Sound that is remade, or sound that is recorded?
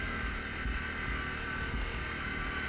recorded